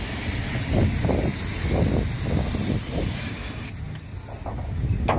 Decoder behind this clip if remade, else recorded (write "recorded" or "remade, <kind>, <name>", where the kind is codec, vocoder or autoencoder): recorded